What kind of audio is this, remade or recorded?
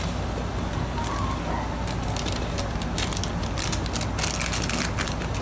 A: recorded